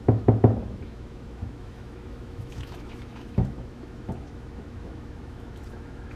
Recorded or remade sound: remade